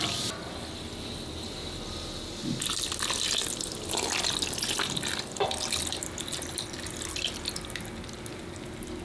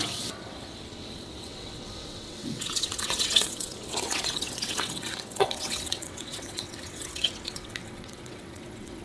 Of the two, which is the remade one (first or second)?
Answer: second